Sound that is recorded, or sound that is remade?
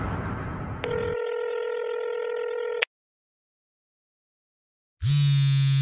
recorded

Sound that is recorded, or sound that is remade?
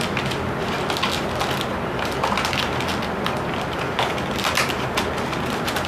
recorded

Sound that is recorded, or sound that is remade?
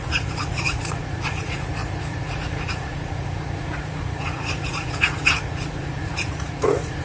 remade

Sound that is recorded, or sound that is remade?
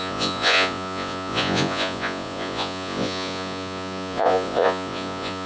remade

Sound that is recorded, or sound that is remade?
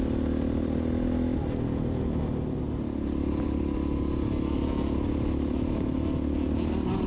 recorded